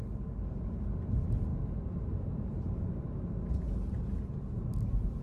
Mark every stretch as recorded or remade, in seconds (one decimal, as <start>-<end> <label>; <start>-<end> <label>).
0.0-5.2 recorded